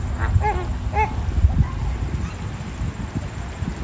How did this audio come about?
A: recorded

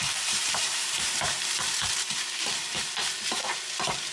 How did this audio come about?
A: remade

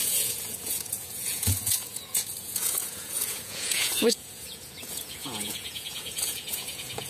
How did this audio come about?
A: remade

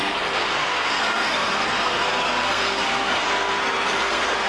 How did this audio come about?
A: remade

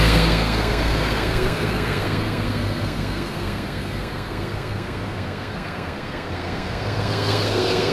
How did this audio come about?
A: remade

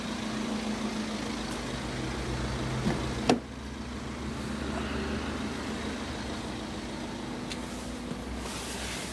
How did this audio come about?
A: recorded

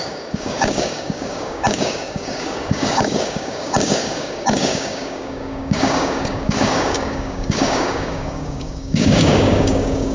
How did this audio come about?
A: remade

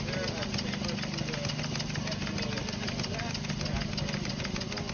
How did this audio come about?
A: recorded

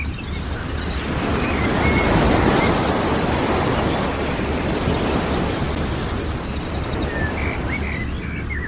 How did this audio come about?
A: recorded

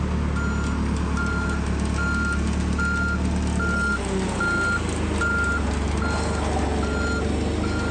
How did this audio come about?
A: recorded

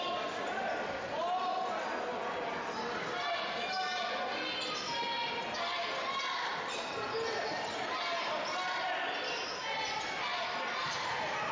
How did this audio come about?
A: recorded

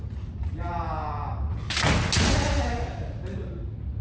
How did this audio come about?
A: recorded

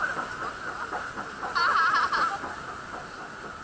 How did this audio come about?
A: recorded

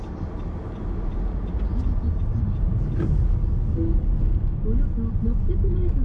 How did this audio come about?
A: recorded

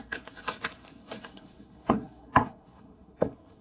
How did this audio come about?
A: remade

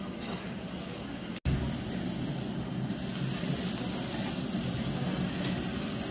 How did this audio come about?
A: recorded